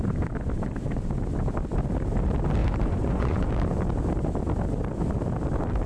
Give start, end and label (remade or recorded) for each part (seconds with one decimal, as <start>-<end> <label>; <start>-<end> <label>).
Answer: 0.0-2.6 recorded; 2.6-3.5 remade; 3.5-5.9 recorded

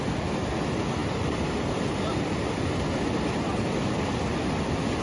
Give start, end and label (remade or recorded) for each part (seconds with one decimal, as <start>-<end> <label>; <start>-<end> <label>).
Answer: 0.0-5.0 recorded

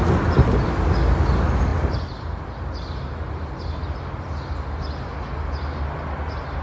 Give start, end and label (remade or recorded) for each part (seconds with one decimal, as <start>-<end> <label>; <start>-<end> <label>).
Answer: 0.0-6.6 recorded

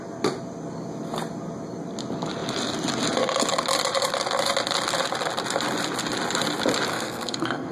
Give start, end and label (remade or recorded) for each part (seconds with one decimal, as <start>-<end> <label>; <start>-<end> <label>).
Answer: 0.0-6.9 recorded; 6.9-7.7 remade

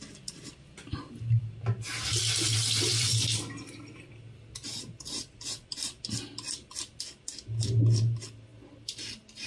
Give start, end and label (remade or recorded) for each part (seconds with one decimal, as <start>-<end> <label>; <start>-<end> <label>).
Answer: 0.0-9.5 recorded

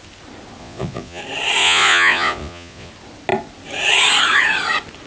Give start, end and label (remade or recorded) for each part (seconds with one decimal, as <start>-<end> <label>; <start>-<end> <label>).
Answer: 0.0-0.6 recorded; 0.6-1.2 remade; 1.2-1.6 recorded; 1.6-2.9 remade; 2.9-5.1 recorded

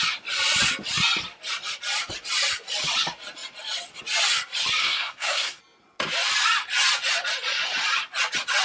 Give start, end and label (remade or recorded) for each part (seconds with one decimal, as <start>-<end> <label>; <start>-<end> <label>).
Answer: 0.0-4.8 recorded; 4.8-5.6 remade; 5.6-8.6 recorded